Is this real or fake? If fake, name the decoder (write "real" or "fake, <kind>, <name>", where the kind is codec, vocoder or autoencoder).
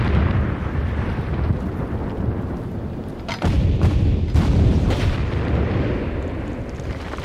real